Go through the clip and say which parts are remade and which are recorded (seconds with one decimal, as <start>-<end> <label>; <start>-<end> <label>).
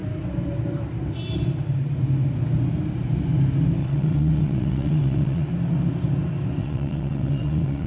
0.0-3.8 recorded; 3.8-5.5 remade; 5.5-6.6 recorded; 6.6-7.9 remade